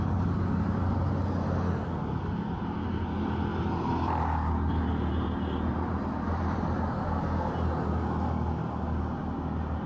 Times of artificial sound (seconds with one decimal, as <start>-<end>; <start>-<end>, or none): 7.0-7.5